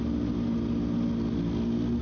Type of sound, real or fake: real